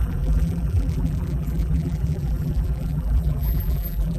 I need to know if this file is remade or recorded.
remade